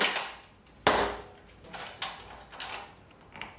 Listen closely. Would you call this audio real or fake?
real